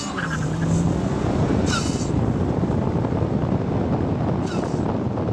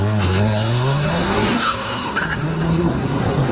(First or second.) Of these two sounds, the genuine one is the first